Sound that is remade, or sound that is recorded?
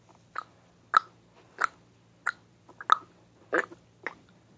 recorded